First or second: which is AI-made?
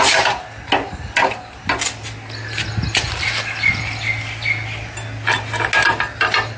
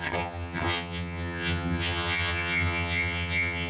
second